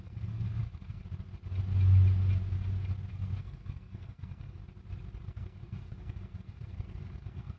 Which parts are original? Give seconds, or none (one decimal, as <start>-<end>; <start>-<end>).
1.0-3.1; 4.6-5.3